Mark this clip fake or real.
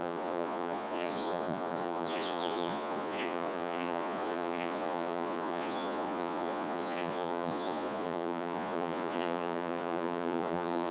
fake